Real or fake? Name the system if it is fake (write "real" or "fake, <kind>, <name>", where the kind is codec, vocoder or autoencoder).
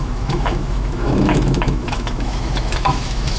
fake, autoencoder, DAC-VAE